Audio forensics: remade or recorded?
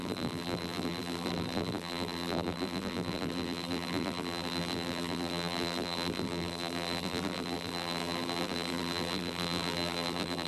remade